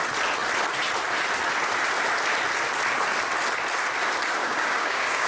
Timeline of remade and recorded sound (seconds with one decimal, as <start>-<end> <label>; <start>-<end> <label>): 0.0-4.4 recorded; 4.4-5.3 remade

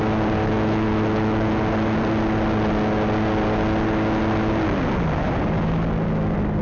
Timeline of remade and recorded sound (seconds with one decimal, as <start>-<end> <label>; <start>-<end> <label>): 0.0-0.4 recorded; 0.4-1.6 remade; 1.6-6.6 recorded

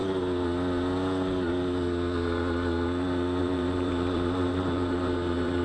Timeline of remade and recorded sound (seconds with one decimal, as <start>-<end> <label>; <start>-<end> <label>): 0.0-3.4 recorded; 3.4-5.6 remade

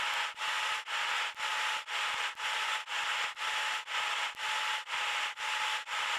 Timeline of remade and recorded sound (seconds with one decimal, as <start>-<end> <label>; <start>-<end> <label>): 0.0-6.2 recorded

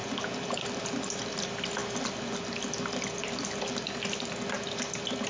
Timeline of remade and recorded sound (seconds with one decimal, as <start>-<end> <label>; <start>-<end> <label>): 0.0-5.3 recorded

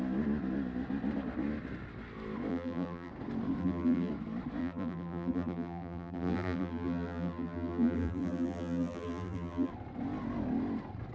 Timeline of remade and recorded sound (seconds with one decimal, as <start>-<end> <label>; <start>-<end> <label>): 0.0-2.5 recorded; 2.5-3.1 remade; 3.1-3.6 recorded; 3.6-4.1 remade; 4.1-4.6 recorded; 4.6-9.7 remade; 9.7-11.1 recorded

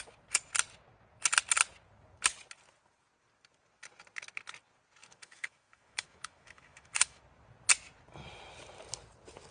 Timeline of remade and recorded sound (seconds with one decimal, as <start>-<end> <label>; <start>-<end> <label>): 0.0-5.0 recorded; 5.0-7.2 remade; 7.2-9.5 recorded

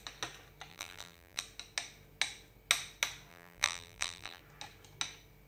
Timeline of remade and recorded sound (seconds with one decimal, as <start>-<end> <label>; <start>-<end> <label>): 0.0-0.7 recorded; 0.7-1.4 remade; 1.4-3.3 recorded; 3.3-4.4 remade; 4.4-5.5 recorded